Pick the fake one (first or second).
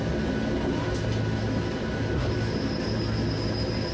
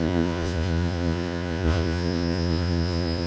second